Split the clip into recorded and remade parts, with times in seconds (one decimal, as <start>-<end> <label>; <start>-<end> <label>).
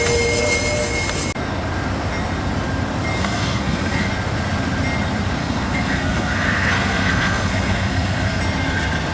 0.0-3.2 recorded; 3.2-4.1 remade; 4.1-5.4 recorded; 5.4-8.4 remade; 8.4-9.1 recorded